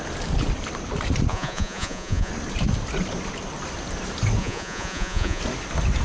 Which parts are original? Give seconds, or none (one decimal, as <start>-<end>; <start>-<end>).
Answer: 0.0-1.3; 2.3-4.4; 5.4-6.0